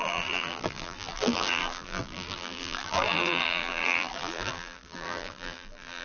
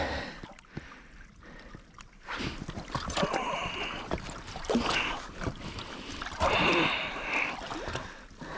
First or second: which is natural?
second